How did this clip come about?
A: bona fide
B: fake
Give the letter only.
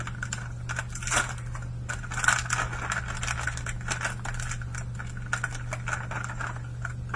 A